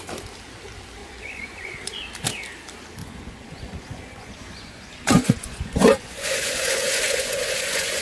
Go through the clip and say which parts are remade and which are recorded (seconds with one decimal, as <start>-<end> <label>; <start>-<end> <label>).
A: 0.0-1.0 recorded; 1.0-2.1 remade; 2.1-3.0 recorded; 3.0-8.0 remade